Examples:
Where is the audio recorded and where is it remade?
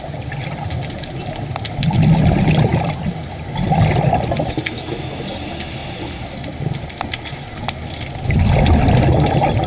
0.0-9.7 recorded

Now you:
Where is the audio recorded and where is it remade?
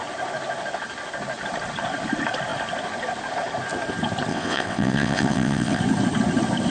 0.0-4.3 recorded; 4.3-5.8 remade; 5.8-6.7 recorded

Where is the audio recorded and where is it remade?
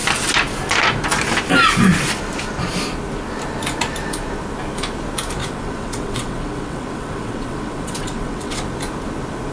0.0-5.4 recorded; 5.4-8.6 remade; 8.6-9.5 recorded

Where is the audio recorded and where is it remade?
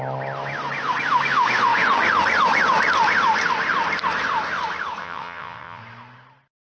0.0-5.0 recorded; 5.0-5.8 remade; 5.8-6.6 recorded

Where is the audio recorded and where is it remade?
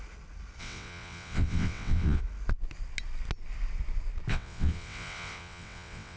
0.0-0.6 recorded; 0.6-2.2 remade; 2.2-4.3 recorded; 4.3-6.2 remade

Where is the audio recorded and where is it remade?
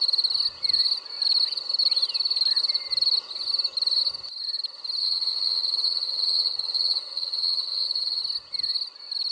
0.0-5.0 recorded; 5.0-8.2 remade; 8.2-9.3 recorded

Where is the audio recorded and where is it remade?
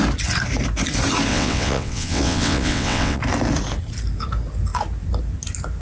0.0-1.3 recorded; 1.3-3.2 remade; 3.2-5.8 recorded